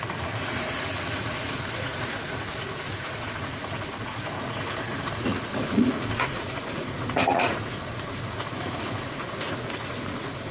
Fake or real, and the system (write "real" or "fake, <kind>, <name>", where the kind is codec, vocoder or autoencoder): fake, vocoder, Vocos